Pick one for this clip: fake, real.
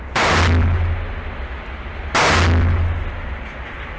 real